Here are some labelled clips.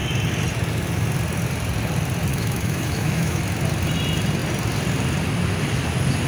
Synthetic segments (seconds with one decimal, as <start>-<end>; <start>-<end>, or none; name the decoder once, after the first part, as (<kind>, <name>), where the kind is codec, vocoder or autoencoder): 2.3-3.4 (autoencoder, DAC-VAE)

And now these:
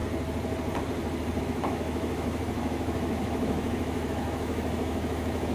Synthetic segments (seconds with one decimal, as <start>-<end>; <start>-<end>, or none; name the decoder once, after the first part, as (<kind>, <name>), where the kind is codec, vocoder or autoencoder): 1.4-5.5 (autoencoder, DAC-VAE)

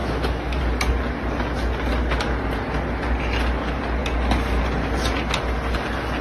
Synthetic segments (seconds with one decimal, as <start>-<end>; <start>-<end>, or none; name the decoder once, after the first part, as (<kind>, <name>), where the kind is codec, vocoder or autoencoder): 0.0-0.6 (autoencoder, DAC-VAE)

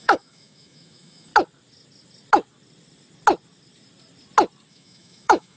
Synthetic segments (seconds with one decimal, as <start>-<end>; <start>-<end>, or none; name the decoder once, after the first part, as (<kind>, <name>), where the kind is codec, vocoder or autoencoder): 0.0-1.3 (autoencoder, DAC-VAE); 4.7-5.6

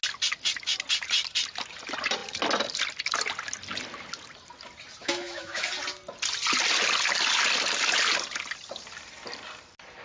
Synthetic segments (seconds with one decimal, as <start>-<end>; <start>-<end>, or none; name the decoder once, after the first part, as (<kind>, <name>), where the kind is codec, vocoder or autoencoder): 5.0-5.6 (autoencoder, DAC-VAE)